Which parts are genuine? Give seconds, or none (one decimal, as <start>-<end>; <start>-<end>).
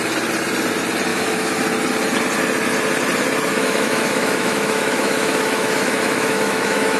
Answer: 0.0-1.1; 1.6-3.5